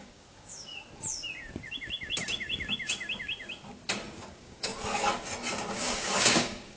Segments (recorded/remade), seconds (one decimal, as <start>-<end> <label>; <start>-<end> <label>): 0.0-0.7 remade; 0.7-4.3 recorded; 4.3-4.7 remade; 4.7-5.7 recorded; 5.7-6.8 remade